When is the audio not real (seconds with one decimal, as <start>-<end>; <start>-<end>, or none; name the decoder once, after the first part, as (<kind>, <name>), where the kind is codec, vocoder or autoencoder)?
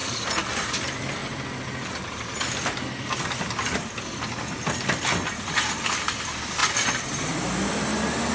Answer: none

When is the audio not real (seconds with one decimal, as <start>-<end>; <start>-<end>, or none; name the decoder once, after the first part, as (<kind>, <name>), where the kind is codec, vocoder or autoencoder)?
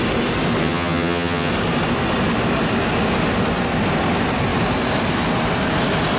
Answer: 0.6-1.5 (vocoder, HiFi-GAN)